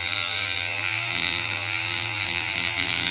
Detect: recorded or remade remade